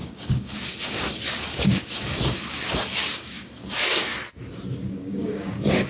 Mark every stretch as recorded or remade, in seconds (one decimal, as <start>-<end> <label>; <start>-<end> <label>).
0.0-4.1 remade; 4.1-4.9 recorded; 4.9-5.9 remade